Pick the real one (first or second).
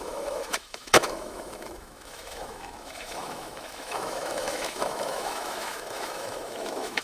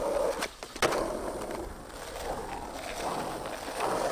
second